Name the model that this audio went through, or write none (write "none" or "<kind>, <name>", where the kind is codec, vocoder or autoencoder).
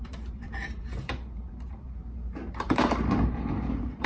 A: vocoder, BigVGAN v2